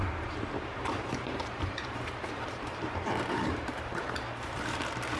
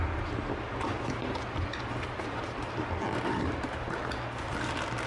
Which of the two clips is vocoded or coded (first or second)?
first